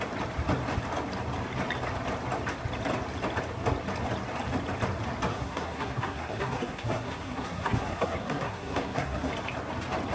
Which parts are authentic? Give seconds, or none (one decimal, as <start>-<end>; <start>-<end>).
0.0-5.3; 9.3-10.1